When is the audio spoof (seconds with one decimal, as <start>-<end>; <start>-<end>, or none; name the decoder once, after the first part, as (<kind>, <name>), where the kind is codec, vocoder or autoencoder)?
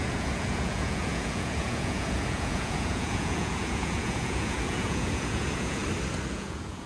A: 0.0-5.8 (vocoder, Vocos); 6.3-6.9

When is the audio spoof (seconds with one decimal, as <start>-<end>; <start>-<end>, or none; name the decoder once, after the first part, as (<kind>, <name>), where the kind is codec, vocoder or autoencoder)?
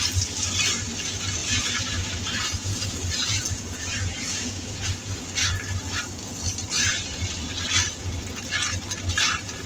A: 1.4-5.2 (vocoder, Vocos)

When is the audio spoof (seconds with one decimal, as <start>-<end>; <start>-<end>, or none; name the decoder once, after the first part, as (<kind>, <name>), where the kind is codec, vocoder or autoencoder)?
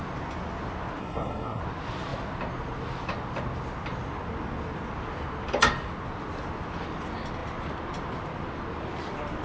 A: 1.0-1.6 (codec, SNAC)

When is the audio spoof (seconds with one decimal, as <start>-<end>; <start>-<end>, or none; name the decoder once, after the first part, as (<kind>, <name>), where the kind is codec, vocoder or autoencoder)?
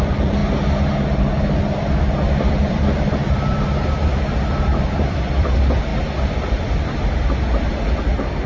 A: 0.0-0.4 (vocoder, BigVGAN v2); 2.3-5.9; 8.0-8.5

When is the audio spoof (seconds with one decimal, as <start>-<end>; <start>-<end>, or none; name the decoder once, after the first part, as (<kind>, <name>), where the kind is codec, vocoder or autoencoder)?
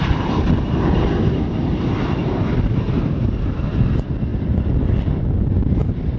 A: 2.2-3.3 (vocoder, BigVGAN v2)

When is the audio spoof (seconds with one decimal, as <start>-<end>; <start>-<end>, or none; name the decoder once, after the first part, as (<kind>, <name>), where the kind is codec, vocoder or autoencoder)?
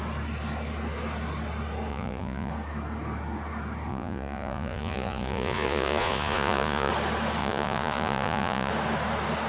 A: 1.9-2.5 (vocoder, Vocos); 3.9-6.9; 7.4-8.7